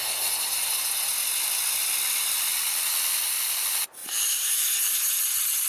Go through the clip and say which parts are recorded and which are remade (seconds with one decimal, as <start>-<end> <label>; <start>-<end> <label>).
0.0-4.0 recorded; 4.0-4.9 remade; 4.9-5.7 recorded

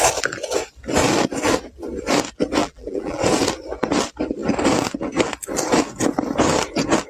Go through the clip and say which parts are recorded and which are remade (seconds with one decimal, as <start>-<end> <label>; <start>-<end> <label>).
0.0-2.6 recorded; 2.6-3.2 remade; 3.2-7.1 recorded